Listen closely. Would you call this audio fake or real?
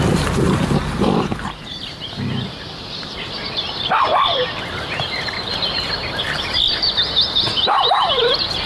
fake